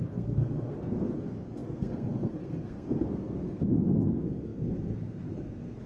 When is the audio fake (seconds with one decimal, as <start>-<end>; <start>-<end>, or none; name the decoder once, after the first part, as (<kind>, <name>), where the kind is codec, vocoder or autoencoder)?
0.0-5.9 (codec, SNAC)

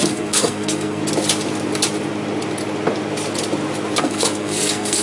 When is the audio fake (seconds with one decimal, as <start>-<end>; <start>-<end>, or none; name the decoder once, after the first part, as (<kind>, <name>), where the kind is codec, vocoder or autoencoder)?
0.0-1.0 (codec, SNAC); 4.0-5.0

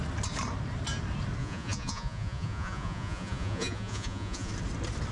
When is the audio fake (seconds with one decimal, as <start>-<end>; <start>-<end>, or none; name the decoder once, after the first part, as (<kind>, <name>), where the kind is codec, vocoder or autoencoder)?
1.4-4.5 (vocoder, Vocos)

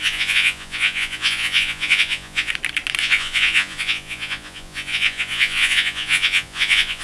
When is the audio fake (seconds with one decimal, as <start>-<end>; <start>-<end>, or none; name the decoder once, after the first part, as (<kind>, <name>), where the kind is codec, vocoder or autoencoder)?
0.0-2.5 (vocoder, Vocos); 3.0-7.0